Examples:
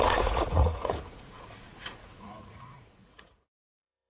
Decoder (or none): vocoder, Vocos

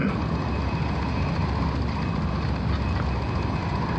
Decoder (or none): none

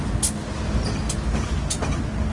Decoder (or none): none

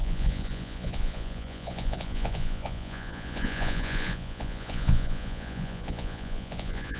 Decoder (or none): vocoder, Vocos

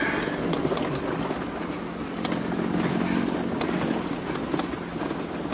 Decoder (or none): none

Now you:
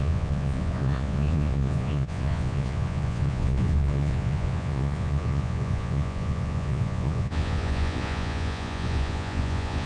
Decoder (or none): vocoder, Vocos